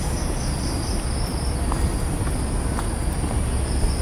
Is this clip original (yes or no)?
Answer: yes